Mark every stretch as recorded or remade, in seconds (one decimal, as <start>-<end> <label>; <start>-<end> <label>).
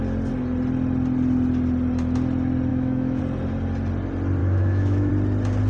0.0-2.7 recorded; 2.7-3.2 remade; 3.2-4.4 recorded; 4.4-5.1 remade; 5.1-5.7 recorded